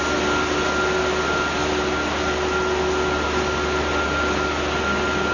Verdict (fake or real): real